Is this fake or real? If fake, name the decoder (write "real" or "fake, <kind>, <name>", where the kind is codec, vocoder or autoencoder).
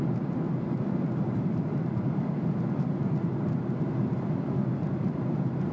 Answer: fake, vocoder, BigVGAN v2